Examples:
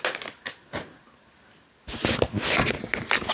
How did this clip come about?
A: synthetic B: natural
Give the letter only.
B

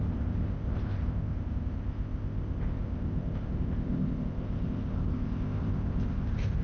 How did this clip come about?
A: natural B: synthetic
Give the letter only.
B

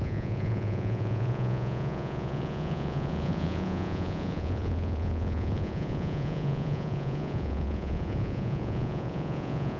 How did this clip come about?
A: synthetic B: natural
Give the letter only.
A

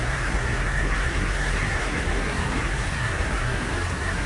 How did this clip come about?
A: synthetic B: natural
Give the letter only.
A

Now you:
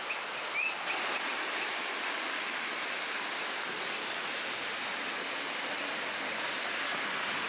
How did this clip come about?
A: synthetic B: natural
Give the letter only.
B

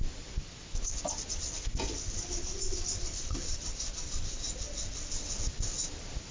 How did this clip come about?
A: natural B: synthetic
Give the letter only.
A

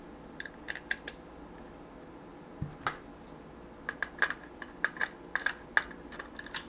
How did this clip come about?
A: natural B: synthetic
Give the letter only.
A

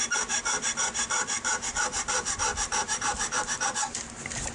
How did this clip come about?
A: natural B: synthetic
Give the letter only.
B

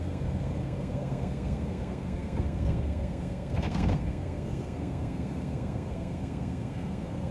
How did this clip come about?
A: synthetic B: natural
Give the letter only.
A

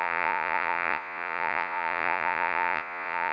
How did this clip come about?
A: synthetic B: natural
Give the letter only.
A